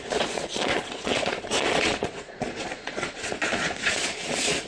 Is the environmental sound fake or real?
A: fake